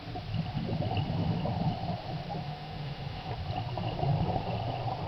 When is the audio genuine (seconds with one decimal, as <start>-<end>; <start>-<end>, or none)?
0.0-2.4; 3.3-5.1